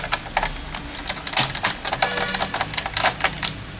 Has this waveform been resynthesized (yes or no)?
no